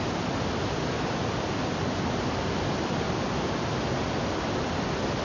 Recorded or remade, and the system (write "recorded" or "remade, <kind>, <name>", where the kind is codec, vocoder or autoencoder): recorded